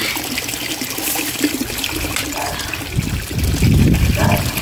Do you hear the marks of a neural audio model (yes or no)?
no